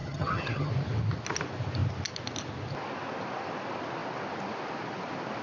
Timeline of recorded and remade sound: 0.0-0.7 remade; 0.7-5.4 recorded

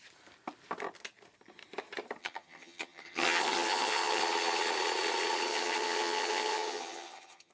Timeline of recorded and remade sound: 0.0-2.2 recorded; 2.2-4.2 remade; 4.2-5.5 recorded; 5.5-7.5 remade

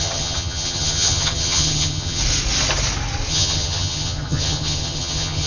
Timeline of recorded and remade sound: 0.0-2.2 remade; 2.2-3.3 recorded; 3.3-5.5 remade

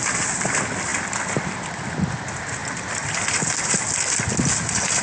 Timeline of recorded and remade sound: 0.0-5.0 recorded

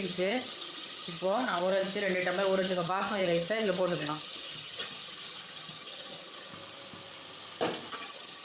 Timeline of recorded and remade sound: 0.0-1.8 remade; 1.8-2.6 recorded; 2.6-6.5 remade; 6.5-7.9 recorded; 7.9-8.4 remade

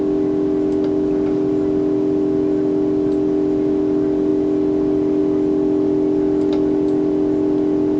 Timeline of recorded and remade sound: 0.0-8.0 recorded